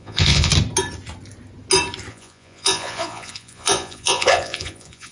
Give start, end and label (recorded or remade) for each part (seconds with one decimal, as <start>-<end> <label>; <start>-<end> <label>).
0.0-0.5 remade; 0.5-2.1 recorded; 2.1-5.1 remade